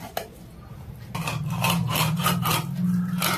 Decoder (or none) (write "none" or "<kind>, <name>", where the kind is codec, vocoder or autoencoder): none